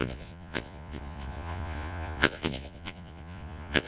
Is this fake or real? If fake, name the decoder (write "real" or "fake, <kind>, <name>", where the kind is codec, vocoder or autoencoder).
fake, vocoder, Vocos